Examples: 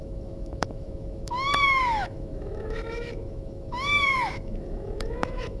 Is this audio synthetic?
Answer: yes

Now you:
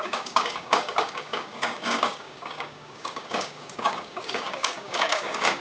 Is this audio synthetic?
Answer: yes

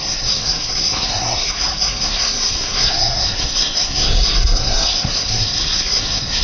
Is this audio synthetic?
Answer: yes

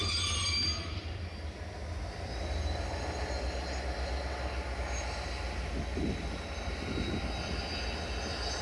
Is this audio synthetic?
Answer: no